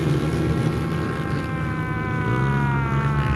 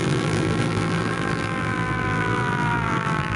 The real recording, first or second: first